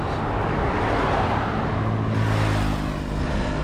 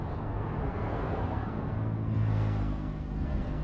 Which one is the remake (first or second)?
second